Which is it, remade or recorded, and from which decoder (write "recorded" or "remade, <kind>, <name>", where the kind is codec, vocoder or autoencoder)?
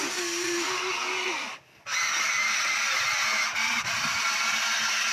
recorded